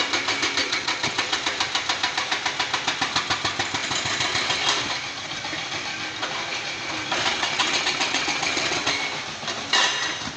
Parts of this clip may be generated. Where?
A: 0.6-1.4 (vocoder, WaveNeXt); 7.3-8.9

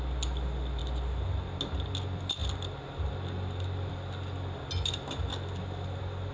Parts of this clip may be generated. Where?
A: none

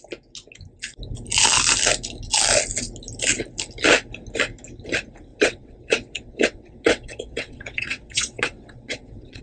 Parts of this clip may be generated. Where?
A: 5.3-9.4 (vocoder, WaveNeXt)

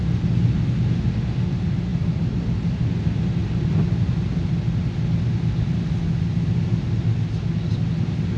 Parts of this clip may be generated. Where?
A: none

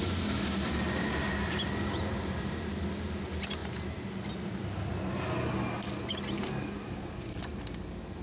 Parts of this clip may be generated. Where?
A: none

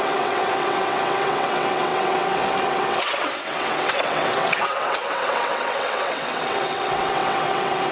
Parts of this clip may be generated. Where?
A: 0.0-7.9 (vocoder, WaveNeXt)

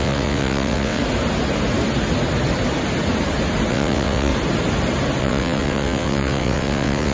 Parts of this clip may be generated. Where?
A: 0.0-1.0 (vocoder, WaveNeXt); 3.7-4.3; 5.2-7.1

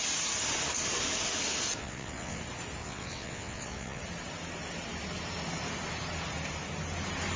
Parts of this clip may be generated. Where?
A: 1.8-2.4 (vocoder, WaveNeXt); 2.8-4.0